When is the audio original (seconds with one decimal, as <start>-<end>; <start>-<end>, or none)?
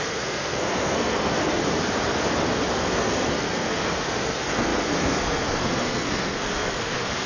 1.6-2.7